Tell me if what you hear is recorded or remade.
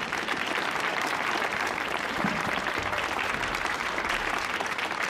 remade